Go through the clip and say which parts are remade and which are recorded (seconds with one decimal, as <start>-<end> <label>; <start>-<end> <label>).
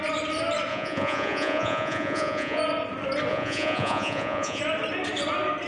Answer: 0.0-0.7 recorded; 0.7-2.6 remade; 2.6-3.3 recorded; 3.3-4.6 remade; 4.6-5.7 recorded